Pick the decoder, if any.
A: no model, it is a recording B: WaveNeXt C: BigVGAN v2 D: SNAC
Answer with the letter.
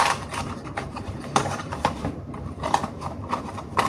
C